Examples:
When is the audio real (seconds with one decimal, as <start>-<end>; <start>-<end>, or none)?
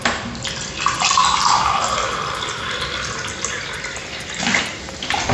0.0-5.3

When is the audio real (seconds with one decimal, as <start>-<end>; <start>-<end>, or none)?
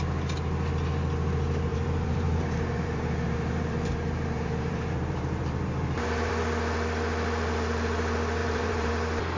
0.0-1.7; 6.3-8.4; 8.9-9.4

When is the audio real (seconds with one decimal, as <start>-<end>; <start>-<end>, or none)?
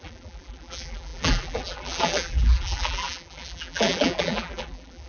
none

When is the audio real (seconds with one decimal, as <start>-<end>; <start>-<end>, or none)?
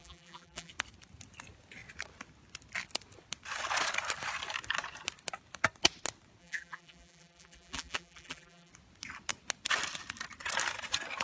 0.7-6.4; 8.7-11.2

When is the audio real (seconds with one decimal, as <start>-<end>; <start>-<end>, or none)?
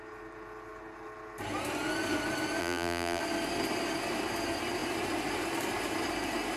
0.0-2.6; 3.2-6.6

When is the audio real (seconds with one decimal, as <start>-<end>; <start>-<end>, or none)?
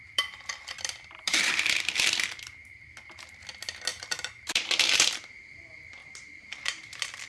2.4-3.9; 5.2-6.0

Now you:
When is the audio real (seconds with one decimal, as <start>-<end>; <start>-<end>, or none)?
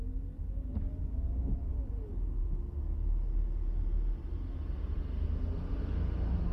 0.0-6.5